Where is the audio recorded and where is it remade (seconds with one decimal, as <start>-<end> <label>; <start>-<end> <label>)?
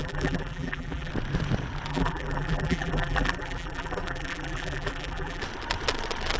0.0-1.1 remade; 1.1-1.9 recorded; 1.9-5.4 remade; 5.4-6.4 recorded